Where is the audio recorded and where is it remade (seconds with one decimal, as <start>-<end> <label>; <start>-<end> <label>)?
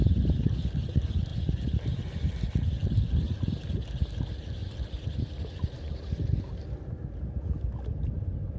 0.0-1.3 recorded; 1.3-1.9 remade; 1.9-4.6 recorded; 4.6-5.5 remade; 5.5-8.6 recorded